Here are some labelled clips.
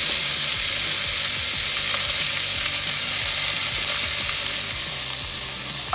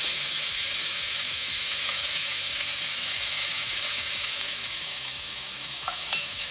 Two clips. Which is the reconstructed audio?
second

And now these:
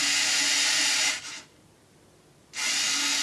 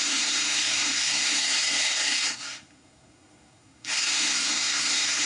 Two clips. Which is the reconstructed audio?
second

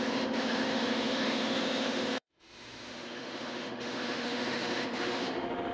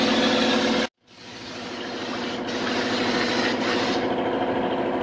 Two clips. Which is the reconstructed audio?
first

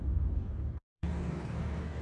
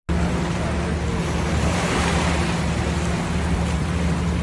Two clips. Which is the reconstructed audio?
first